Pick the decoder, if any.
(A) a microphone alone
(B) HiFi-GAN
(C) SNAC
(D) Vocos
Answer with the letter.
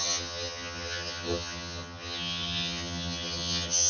B